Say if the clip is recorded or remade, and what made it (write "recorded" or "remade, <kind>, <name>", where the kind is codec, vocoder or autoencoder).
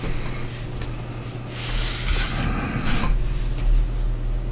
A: recorded